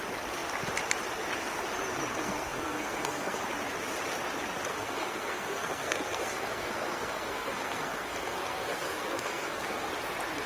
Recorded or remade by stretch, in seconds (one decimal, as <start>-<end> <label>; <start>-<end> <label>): 0.0-2.1 recorded; 2.1-3.4 remade; 3.4-4.7 recorded; 4.7-9.9 remade; 9.9-10.5 recorded